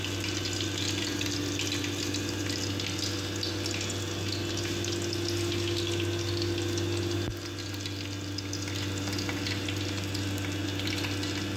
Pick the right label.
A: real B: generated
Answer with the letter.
A